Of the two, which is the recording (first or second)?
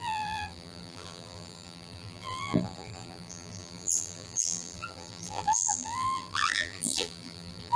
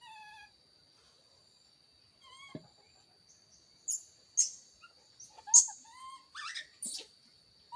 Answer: second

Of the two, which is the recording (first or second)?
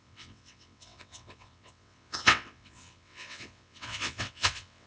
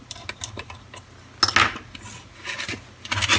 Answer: second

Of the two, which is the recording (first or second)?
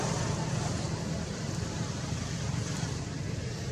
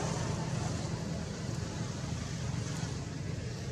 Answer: second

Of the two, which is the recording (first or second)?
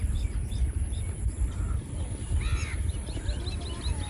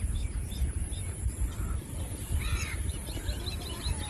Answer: first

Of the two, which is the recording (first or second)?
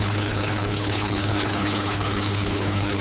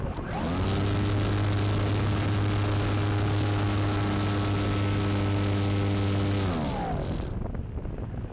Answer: second